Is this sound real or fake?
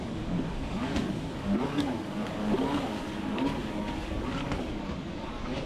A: fake